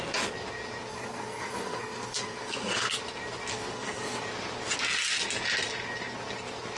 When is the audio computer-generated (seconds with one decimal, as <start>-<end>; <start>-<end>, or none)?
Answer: 0.9-3.0; 3.5-4.2